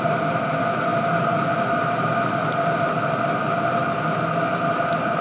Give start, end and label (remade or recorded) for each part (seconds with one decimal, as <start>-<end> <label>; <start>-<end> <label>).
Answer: 0.0-5.2 recorded